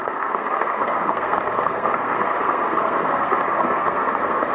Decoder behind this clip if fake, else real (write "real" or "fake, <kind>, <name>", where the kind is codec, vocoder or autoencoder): fake, codec, SNAC